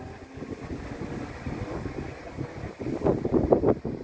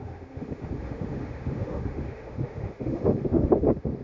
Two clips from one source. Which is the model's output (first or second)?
second